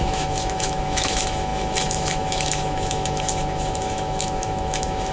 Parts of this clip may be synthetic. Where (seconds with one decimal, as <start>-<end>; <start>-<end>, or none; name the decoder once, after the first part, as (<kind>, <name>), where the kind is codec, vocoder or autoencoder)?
0.0-5.1 (autoencoder, DAC-VAE)